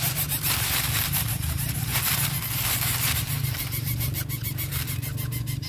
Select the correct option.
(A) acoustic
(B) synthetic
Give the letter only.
A